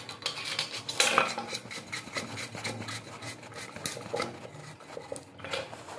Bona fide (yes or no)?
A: yes